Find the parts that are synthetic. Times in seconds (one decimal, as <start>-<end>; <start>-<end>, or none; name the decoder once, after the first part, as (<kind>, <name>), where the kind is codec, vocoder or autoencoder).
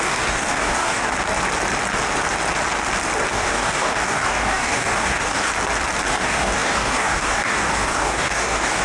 0.0-1.1 (codec, DAC); 3.3-5.5; 6.1-8.8